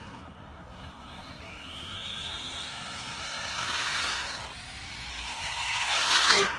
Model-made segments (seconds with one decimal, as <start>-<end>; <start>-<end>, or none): 0.0-4.4; 5.1-6.6